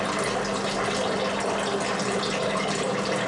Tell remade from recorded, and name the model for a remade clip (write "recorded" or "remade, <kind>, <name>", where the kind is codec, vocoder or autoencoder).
recorded